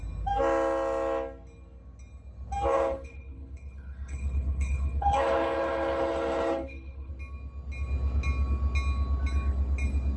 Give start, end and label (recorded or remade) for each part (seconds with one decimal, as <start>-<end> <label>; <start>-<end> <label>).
0.0-2.7 recorded; 2.7-7.1 remade; 7.1-10.2 recorded